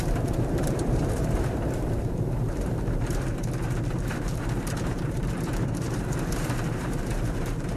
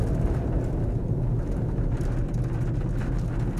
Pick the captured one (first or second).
second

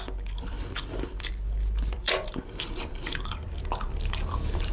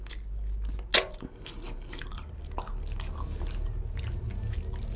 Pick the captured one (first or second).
second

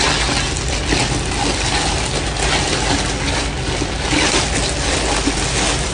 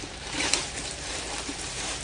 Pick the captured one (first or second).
first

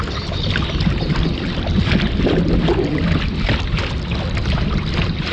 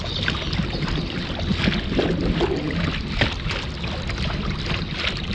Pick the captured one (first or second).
second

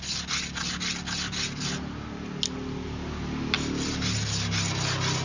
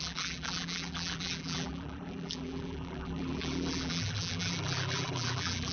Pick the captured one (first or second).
first